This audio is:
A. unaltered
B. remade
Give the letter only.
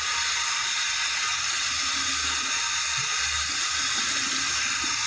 A